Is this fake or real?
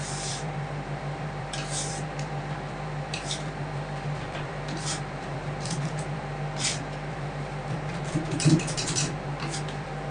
fake